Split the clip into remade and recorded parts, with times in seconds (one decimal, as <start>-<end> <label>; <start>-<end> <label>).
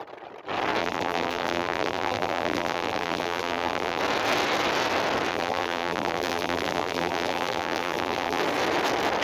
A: 0.0-0.8 recorded; 0.8-4.0 remade; 4.0-5.3 recorded; 5.3-8.4 remade; 8.4-9.2 recorded